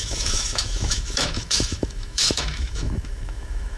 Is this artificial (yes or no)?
yes